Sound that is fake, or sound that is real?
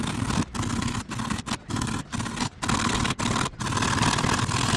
real